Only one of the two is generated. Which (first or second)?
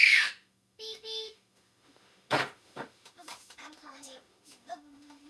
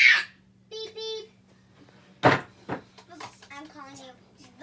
first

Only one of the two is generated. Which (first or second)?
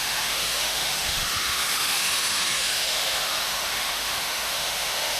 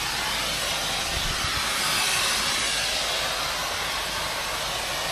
first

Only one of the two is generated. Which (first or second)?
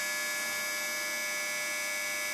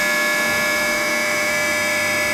second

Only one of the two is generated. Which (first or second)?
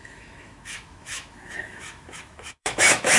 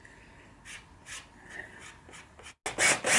first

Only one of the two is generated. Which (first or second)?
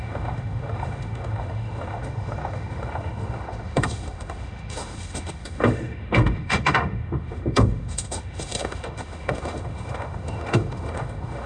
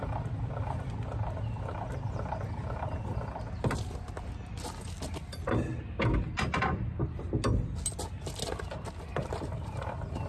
first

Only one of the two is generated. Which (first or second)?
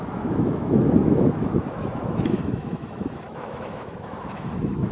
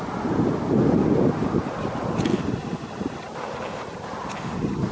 first